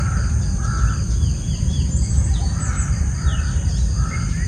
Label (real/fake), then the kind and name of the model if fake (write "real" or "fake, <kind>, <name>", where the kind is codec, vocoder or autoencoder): real